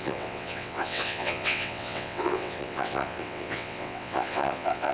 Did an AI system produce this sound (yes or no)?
yes